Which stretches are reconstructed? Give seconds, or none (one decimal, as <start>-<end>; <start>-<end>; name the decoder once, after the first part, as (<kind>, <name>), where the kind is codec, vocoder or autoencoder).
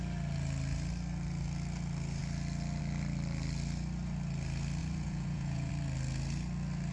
4.8-5.7 (vocoder, Vocos)